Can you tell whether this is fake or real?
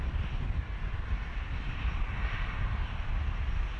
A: real